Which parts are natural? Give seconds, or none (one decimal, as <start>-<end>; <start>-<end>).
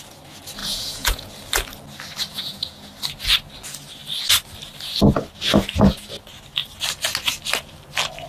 0.0-0.6; 1.3-2.3; 2.9-8.3